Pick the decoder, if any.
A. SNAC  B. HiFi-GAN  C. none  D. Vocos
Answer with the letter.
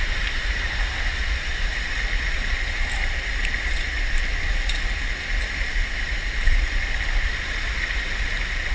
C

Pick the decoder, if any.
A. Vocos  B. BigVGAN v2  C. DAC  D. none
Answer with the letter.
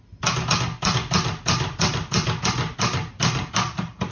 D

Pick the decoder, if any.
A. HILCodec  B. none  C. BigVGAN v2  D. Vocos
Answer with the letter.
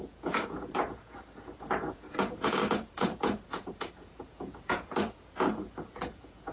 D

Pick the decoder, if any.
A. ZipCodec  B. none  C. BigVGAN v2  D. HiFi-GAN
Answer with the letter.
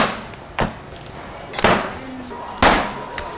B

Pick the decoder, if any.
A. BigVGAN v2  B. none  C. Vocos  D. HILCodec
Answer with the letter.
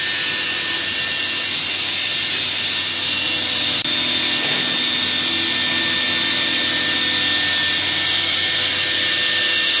B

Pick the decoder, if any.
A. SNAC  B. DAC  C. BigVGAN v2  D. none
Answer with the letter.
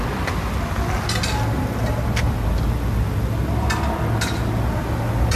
D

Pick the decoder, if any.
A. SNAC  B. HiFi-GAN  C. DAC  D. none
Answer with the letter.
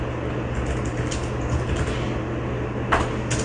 D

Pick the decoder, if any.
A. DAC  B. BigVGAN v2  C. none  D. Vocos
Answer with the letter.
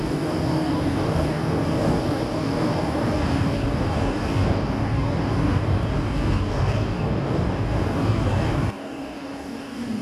A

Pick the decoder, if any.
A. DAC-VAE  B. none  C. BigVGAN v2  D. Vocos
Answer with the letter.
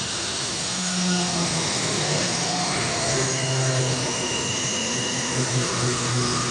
A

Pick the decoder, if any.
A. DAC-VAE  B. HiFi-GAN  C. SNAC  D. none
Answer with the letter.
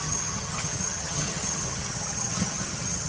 B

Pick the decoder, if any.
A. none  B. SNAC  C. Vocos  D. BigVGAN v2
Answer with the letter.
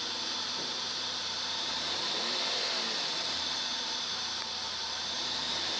D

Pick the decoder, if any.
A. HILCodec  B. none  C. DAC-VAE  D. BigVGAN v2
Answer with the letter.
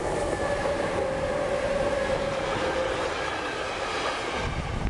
D